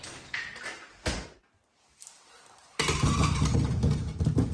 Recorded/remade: recorded